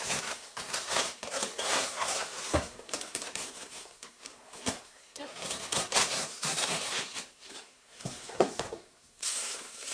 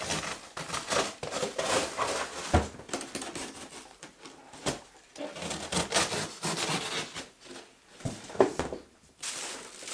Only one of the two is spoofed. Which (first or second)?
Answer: first